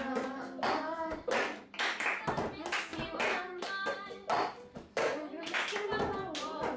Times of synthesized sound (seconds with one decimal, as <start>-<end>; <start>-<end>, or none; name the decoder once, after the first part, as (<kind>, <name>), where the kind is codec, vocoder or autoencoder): none

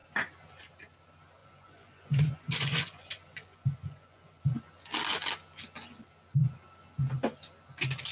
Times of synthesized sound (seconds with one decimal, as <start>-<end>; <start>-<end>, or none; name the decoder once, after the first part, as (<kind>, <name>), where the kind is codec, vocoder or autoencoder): 1.4-4.4 (vocoder, Vocos)

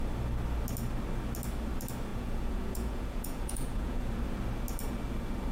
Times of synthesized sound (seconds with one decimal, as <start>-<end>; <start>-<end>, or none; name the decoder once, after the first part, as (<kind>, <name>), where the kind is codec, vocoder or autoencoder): 2.1-4.1 (vocoder, Vocos)

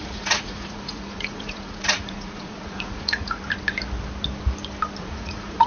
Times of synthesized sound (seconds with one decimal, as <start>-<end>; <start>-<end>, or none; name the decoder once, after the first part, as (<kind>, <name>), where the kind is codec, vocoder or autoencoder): 0.0-3.4 (vocoder, Vocos); 5.0-5.7

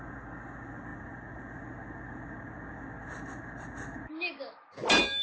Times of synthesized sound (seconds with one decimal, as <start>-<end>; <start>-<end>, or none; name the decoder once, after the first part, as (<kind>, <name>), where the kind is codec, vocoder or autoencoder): none

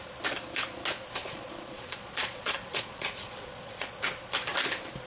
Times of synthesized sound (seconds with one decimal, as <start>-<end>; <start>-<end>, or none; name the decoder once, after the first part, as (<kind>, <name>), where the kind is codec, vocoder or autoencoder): 1.2-4.0 (vocoder, Vocos)